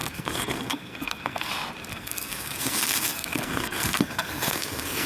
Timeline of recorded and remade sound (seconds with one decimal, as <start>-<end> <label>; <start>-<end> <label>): 0.0-1.5 remade; 1.5-1.9 recorded; 1.9-5.1 remade